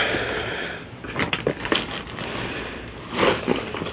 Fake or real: fake